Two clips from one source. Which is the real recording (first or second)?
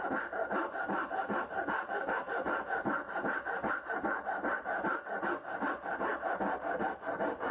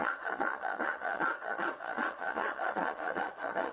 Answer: first